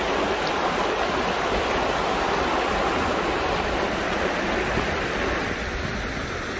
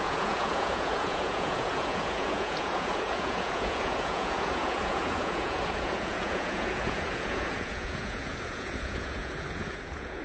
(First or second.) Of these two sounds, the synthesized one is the second